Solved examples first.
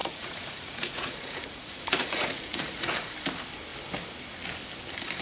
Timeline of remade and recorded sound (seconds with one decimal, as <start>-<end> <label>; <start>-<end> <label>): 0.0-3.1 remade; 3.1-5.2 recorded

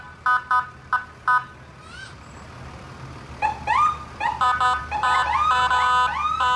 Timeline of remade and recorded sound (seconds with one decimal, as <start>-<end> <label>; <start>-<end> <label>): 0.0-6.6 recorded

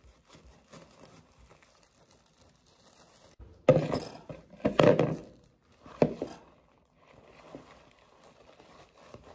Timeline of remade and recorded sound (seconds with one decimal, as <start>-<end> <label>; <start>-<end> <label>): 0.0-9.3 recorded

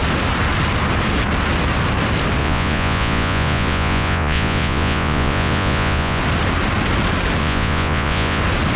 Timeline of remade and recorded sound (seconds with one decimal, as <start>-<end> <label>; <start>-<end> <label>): 0.0-2.4 recorded; 2.4-6.2 remade; 6.2-7.4 recorded; 7.4-8.4 remade; 8.4-8.8 recorded

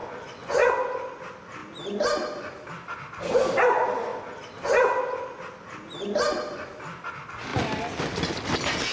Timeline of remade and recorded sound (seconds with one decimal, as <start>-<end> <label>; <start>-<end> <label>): 0.0-0.7 remade; 0.7-8.9 recorded

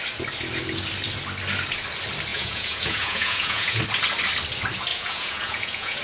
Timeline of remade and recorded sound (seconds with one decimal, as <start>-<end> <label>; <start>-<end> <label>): 0.0-2.3 recorded; 2.3-3.8 remade; 3.8-4.9 recorded; 4.9-6.0 remade

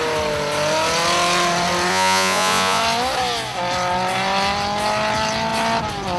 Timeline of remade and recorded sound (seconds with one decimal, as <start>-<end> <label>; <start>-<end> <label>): 0.0-1.9 recorded; 1.9-2.8 remade; 2.8-6.2 recorded